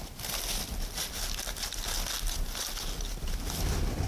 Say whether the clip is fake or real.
real